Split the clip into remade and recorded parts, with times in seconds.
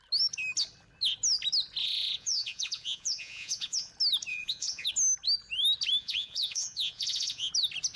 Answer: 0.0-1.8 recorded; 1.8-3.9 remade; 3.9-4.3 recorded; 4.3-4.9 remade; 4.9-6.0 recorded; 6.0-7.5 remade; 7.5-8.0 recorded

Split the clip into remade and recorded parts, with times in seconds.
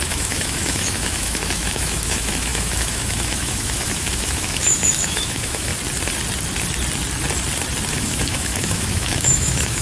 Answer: 0.0-5.7 remade; 5.7-7.9 recorded; 7.9-9.8 remade